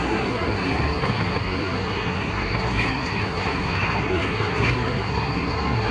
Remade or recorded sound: remade